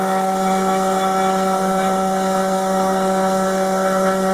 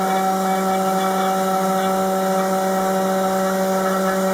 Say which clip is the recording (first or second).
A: second